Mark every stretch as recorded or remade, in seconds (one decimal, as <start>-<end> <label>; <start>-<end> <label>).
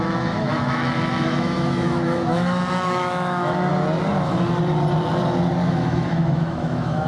0.0-3.7 remade; 3.7-5.7 recorded; 5.7-7.1 remade